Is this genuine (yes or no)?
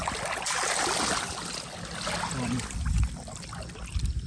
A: yes